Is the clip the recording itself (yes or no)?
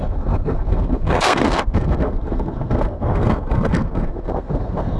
no